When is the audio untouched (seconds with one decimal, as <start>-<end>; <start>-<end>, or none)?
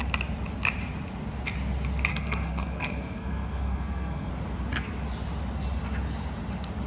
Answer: 0.0-2.1; 4.3-6.9